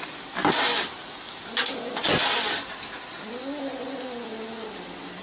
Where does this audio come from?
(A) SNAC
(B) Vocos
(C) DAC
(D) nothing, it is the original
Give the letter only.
D